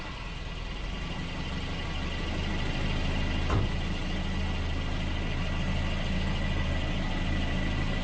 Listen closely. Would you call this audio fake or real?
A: real